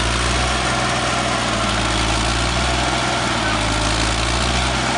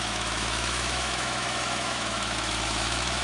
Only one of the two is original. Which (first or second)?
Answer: first